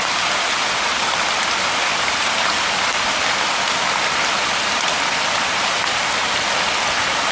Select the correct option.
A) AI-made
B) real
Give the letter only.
B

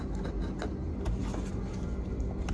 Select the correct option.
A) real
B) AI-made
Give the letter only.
A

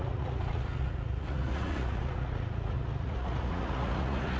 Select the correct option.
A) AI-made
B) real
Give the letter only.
A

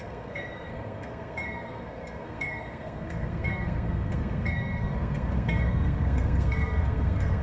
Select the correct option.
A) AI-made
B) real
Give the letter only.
A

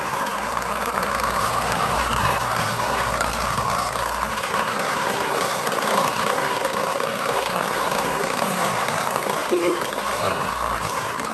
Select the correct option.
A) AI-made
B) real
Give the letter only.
A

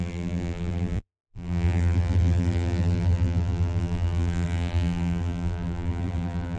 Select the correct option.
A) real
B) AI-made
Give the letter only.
B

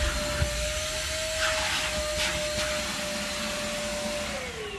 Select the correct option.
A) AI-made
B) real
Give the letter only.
B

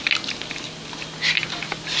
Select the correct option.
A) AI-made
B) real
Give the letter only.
B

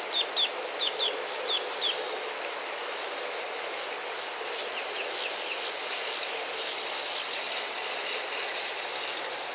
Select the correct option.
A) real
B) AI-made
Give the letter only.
A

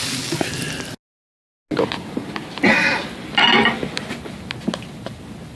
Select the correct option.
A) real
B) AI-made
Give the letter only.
A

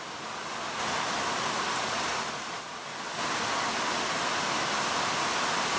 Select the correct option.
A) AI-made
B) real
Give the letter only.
B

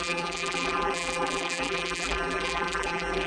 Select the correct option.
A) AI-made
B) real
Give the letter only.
A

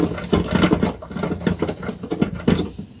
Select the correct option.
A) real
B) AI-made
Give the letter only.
A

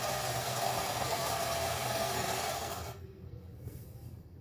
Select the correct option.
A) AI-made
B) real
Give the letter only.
A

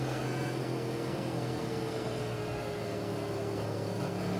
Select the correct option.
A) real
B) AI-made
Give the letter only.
B